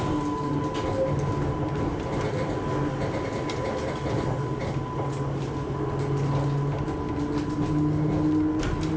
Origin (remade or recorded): recorded